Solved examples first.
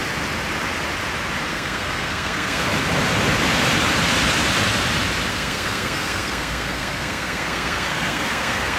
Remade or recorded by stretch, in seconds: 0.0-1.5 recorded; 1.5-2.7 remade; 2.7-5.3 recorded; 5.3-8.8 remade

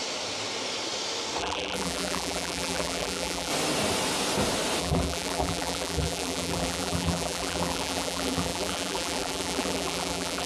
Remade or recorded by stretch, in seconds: 0.0-1.4 recorded; 1.4-3.5 remade; 3.5-4.8 recorded; 4.8-10.5 remade

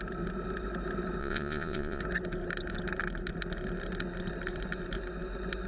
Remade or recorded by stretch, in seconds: 0.0-1.2 recorded; 1.2-2.0 remade; 2.0-5.7 recorded

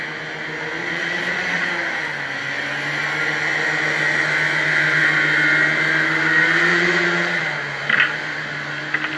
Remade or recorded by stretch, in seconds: 0.0-0.8 recorded; 0.8-1.7 remade; 1.7-6.7 recorded; 6.7-7.4 remade; 7.4-9.2 recorded

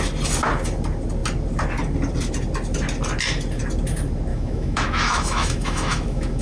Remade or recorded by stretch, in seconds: 0.0-4.3 recorded; 4.3-6.4 remade

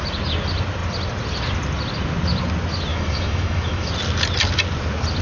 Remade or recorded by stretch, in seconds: 0.0-2.9 recorded; 2.9-3.9 remade; 3.9-5.2 recorded